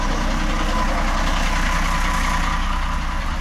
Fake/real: real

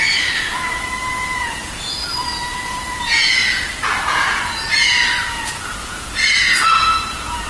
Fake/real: fake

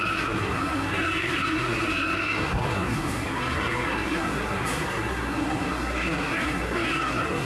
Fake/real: fake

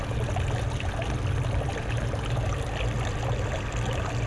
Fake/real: real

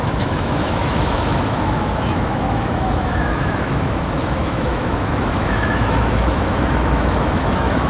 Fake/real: fake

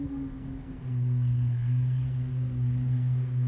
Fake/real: fake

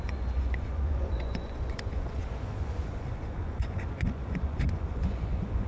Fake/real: fake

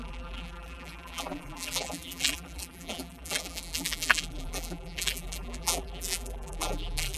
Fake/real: fake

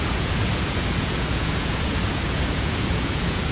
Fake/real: fake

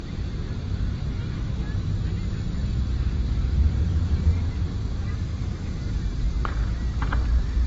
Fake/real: fake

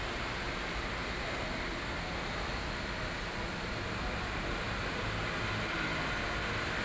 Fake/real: real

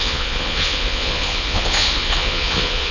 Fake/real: fake